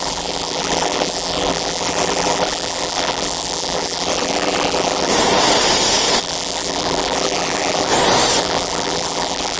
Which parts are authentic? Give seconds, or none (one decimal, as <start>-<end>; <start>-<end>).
5.1-6.2; 7.9-8.4